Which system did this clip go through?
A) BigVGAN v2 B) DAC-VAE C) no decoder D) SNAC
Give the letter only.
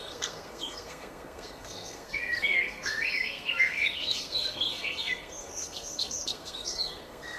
D